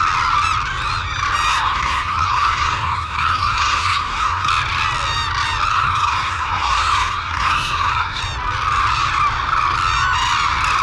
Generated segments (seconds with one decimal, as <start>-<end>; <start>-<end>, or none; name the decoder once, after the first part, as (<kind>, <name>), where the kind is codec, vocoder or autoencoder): 1.5-4.5 (codec, SNAC); 5.7-8.2